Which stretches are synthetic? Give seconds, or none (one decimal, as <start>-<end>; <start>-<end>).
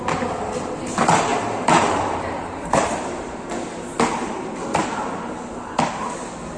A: 1.3-4.5